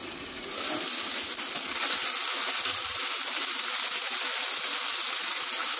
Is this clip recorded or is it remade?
recorded